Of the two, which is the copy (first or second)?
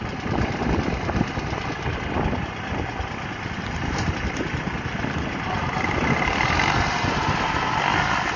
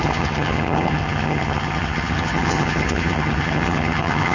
second